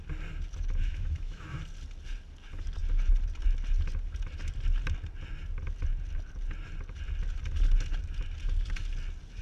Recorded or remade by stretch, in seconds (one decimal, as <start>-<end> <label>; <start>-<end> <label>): 0.0-0.8 recorded; 0.8-1.6 remade; 1.6-9.4 recorded